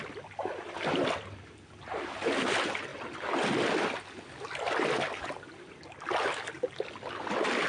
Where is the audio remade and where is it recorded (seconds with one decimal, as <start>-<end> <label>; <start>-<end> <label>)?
0.0-7.7 recorded